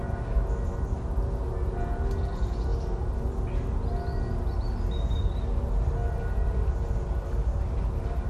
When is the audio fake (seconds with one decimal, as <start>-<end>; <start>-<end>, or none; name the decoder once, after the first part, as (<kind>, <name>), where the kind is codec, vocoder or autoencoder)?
none